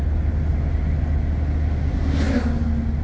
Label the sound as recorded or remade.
recorded